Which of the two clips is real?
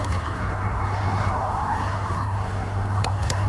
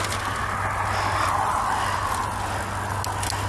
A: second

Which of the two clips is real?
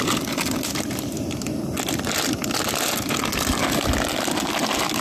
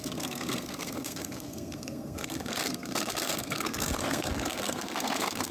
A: first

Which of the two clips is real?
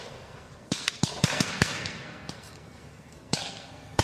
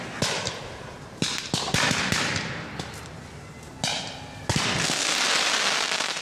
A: second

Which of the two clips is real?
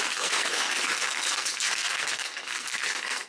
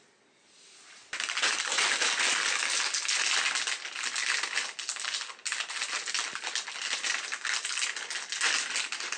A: second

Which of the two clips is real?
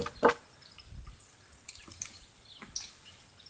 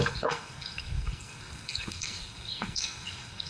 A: first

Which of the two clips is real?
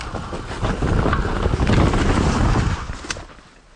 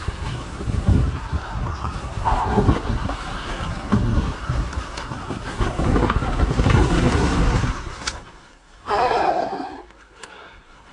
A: first